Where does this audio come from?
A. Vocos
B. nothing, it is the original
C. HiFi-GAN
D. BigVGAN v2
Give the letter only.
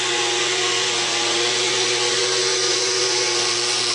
A